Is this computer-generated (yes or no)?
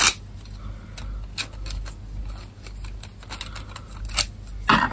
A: no